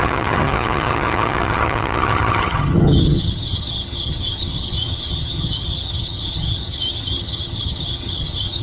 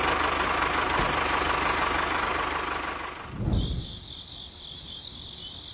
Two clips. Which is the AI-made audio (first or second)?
first